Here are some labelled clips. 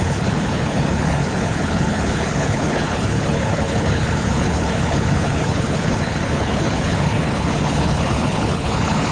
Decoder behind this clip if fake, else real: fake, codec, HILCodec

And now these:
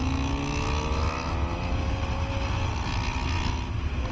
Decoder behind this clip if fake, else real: real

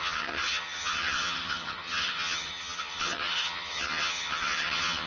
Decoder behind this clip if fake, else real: fake, vocoder, HiFi-GAN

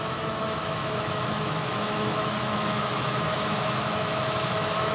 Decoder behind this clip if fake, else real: fake, autoencoder, DAC-VAE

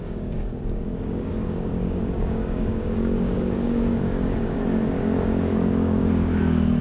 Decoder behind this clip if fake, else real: fake, codec, DAC